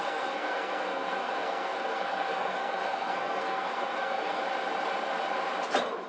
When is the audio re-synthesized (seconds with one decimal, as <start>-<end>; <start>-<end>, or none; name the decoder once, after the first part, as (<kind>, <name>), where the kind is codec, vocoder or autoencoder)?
0.0-4.4 (codec, SNAC)